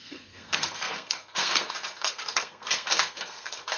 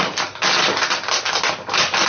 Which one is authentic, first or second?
second